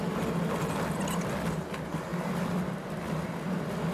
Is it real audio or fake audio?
real